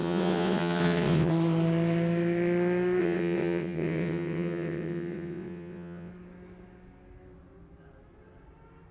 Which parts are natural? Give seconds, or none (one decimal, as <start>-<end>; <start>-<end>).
1.3-3.0; 6.1-8.9